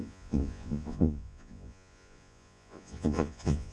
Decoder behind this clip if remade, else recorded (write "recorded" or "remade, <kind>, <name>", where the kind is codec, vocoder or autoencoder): remade, vocoder, Vocos